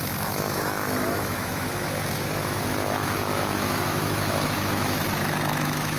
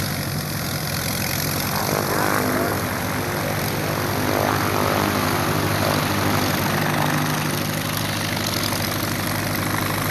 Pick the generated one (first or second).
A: first